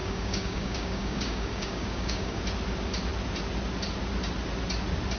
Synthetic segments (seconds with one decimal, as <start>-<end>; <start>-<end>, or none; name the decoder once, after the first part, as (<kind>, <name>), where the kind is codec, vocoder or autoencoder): 0.0-2.4 (codec, DAC)